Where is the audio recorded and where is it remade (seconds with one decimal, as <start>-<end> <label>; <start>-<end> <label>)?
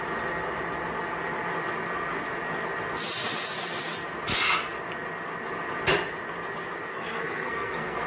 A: 0.0-6.9 recorded; 6.9-8.1 remade